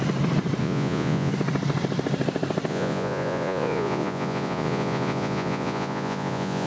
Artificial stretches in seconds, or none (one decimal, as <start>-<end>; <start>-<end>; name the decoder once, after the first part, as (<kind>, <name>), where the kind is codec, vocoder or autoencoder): 0.6-1.3 (vocoder, Vocos); 2.7-6.7